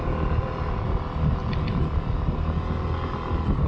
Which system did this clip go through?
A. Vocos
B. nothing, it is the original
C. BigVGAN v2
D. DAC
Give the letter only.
B